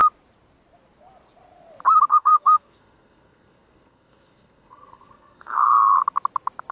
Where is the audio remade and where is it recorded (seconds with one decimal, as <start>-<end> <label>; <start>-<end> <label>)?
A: 0.0-2.1 recorded; 2.1-6.0 remade; 6.0-6.7 recorded